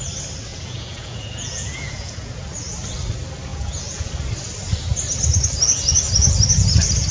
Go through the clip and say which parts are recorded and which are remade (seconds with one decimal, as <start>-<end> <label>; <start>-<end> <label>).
0.0-0.5 recorded; 0.5-2.3 remade; 2.3-3.5 recorded; 3.5-4.1 remade; 4.1-7.1 recorded